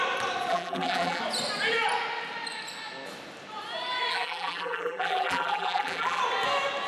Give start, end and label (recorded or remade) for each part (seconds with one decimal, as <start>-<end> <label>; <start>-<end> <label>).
0.0-0.5 recorded; 0.5-1.2 remade; 1.2-4.1 recorded; 4.1-6.2 remade; 6.2-6.9 recorded